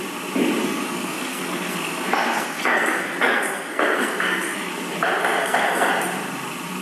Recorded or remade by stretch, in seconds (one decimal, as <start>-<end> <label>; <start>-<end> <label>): 0.0-0.6 recorded; 0.6-4.7 remade; 4.7-5.2 recorded; 5.2-5.9 remade; 5.9-6.8 recorded